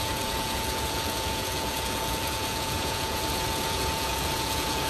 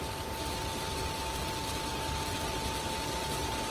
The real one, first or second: second